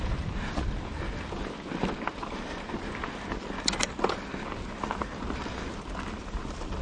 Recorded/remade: recorded